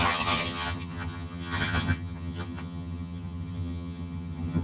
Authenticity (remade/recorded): remade